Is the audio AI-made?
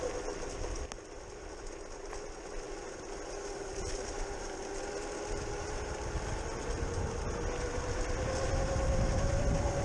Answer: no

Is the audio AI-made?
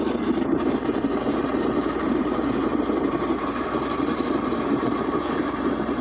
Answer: yes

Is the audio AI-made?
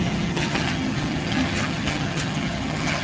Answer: yes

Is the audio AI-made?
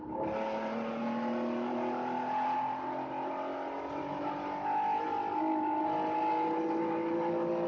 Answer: no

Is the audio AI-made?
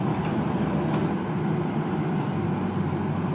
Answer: no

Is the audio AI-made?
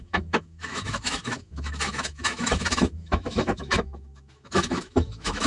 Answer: yes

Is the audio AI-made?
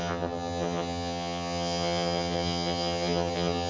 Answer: yes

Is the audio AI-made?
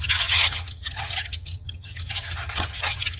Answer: yes